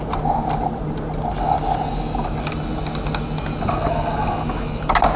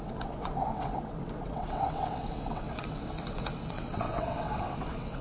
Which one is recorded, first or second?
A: first